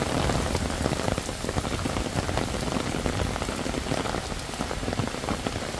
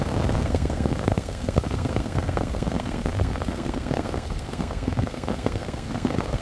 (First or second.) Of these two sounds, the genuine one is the first